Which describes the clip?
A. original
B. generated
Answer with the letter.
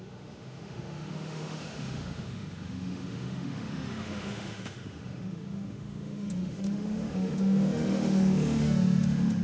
B